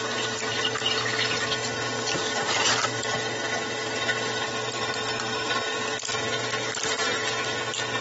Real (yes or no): yes